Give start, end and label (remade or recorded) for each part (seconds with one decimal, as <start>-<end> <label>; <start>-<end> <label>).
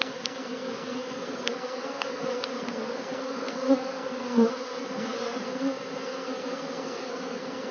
0.0-7.7 remade